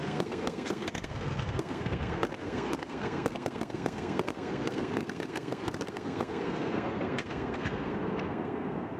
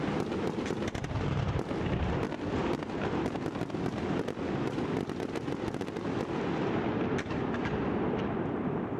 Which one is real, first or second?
second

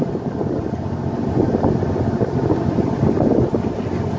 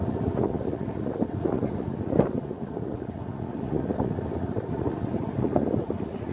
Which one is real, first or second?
first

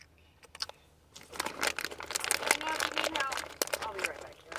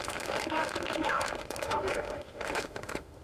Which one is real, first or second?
first